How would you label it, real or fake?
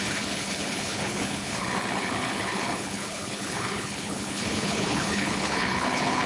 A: fake